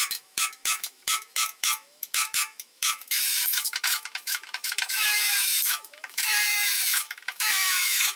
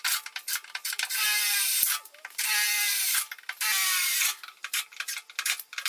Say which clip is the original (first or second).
second